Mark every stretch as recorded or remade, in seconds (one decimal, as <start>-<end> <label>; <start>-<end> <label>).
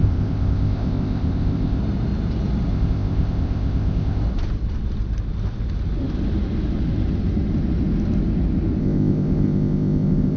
0.0-1.8 remade; 1.8-2.7 recorded; 2.7-4.2 remade; 4.2-8.8 recorded; 8.8-10.4 remade